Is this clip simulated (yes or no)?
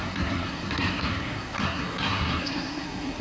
yes